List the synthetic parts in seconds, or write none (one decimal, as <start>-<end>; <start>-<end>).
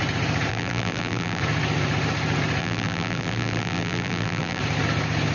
0.5-1.4; 2.6-4.6